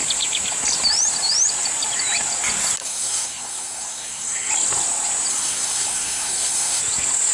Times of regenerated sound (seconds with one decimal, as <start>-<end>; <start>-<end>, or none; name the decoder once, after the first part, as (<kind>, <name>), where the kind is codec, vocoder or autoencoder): 2.8-4.5 (codec, SNAC); 5.3-6.8